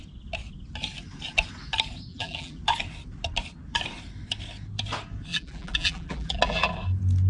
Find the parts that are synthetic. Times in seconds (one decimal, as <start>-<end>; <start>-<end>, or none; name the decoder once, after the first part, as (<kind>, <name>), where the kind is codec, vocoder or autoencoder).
2.1-2.6 (vocoder, BigVGAN v2); 5.3-6.7